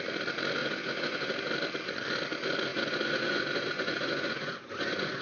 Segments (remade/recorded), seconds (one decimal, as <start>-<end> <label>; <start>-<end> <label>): 0.0-0.6 recorded; 0.6-1.3 remade; 1.3-2.7 recorded; 2.7-5.2 remade

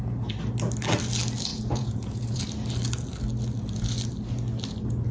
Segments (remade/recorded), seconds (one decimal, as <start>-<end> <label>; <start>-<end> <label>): 0.0-1.5 recorded; 1.5-2.4 remade; 2.4-5.1 recorded